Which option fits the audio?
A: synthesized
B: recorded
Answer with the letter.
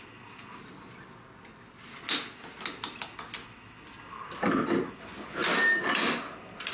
B